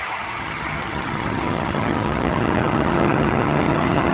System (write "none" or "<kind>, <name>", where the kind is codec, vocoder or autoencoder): vocoder, HiFi-GAN